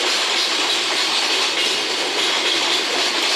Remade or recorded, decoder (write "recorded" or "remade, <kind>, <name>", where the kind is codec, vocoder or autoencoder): recorded